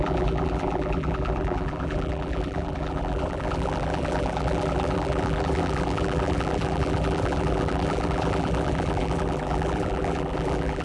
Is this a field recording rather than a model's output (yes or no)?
no